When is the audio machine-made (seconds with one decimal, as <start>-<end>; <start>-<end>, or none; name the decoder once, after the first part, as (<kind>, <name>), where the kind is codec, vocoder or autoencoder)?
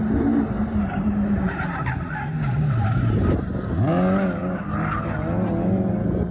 0.0-3.8 (vocoder, BigVGAN v2)